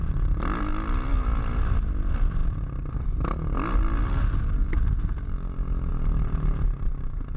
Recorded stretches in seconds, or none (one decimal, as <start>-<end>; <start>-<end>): 0.0-7.4

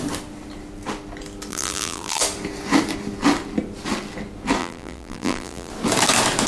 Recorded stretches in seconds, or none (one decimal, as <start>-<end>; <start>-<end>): 0.0-1.5; 2.2-4.6; 5.7-6.5

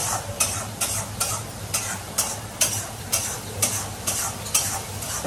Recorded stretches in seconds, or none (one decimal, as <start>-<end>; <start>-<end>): none

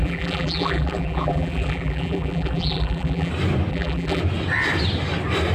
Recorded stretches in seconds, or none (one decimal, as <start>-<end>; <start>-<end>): 3.3-3.7; 4.2-5.5

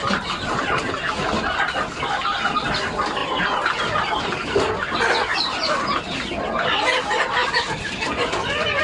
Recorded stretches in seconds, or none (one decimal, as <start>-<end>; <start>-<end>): 0.0-5.3; 6.3-7.4